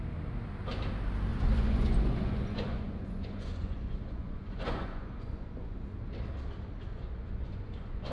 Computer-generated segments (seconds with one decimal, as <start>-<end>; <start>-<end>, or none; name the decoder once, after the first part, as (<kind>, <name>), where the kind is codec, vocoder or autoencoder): 1.3-5.8 (vocoder, Vocos); 6.9-8.1